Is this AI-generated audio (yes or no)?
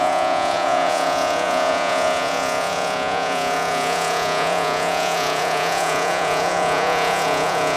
yes